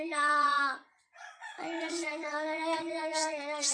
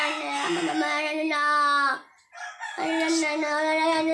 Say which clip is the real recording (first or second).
second